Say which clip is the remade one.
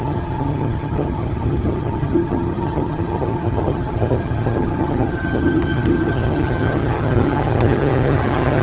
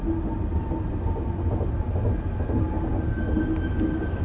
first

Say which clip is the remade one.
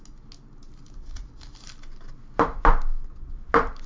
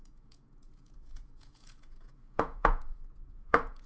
second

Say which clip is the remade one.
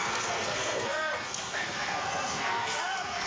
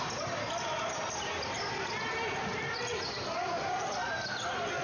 first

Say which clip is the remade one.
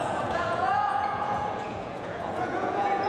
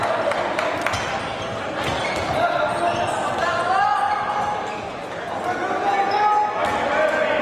first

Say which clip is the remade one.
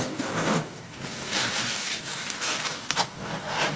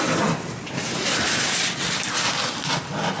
first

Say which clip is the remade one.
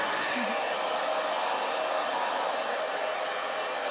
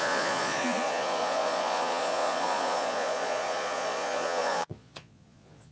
second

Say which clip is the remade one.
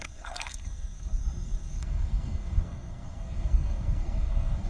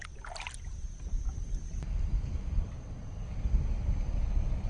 first